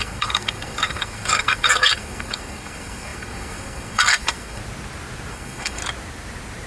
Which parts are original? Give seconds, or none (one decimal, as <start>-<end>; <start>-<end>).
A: 4.6-5.3; 5.8-6.7